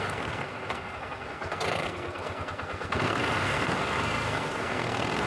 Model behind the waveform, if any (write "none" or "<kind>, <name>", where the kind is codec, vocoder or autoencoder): codec, SNAC